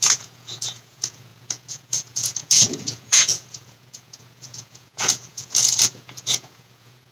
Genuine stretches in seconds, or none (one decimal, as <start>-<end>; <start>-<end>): none